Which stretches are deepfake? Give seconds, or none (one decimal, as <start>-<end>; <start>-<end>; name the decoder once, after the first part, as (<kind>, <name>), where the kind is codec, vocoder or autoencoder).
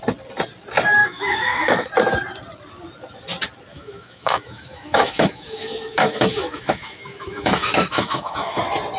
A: 1.0-1.9 (autoencoder, DAC-VAE); 3.7-8.6